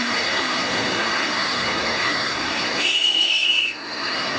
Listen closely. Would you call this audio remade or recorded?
remade